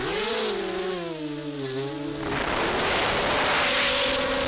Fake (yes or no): no